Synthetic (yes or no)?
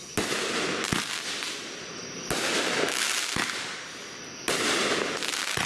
no